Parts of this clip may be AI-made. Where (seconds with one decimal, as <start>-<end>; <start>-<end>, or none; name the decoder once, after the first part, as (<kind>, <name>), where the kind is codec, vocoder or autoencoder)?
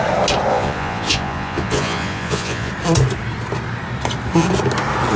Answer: 0.5-2.7 (vocoder, Vocos)